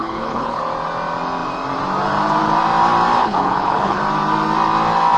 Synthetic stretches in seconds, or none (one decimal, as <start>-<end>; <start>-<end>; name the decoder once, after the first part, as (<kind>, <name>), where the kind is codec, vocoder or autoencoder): 0.0-0.6 (codec, HILCodec); 3.2-4.0